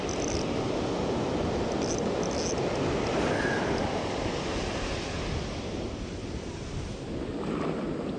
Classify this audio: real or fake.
real